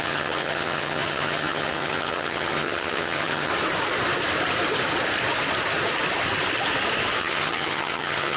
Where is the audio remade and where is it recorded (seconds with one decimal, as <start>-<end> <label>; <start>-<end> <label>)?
0.0-3.5 remade; 3.5-7.2 recorded; 7.2-8.4 remade